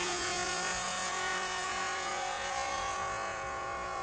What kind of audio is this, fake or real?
fake